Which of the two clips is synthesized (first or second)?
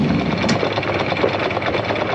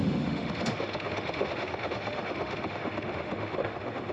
second